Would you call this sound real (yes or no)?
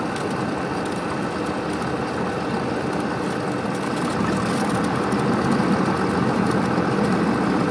yes